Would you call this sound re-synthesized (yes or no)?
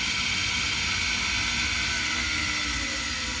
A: no